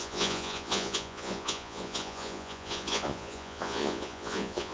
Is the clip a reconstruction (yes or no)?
yes